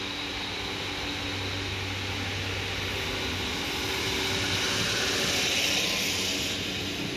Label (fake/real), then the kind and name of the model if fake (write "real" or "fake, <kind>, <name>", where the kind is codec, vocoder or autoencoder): real